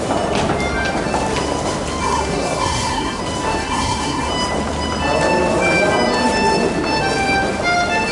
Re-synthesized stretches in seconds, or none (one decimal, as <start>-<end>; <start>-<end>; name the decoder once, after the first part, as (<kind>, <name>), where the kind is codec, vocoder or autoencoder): 2.0-3.2 (codec, SNAC); 3.6-4.3